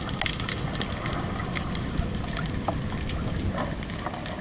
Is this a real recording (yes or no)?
yes